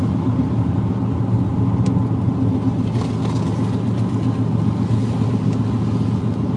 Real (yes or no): yes